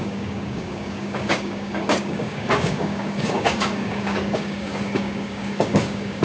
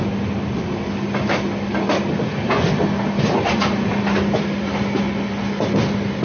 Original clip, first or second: second